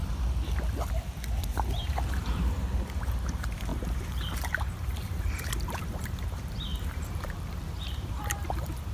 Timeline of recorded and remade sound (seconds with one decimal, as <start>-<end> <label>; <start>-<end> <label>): 0.0-1.3 recorded; 1.3-8.9 remade